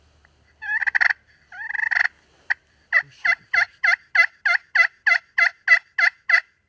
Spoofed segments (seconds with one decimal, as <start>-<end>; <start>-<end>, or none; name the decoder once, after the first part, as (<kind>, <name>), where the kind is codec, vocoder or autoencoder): none